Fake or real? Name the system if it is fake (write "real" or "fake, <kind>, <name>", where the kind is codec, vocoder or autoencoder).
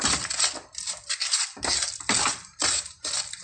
real